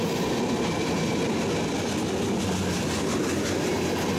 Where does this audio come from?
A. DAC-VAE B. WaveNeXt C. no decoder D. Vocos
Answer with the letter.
C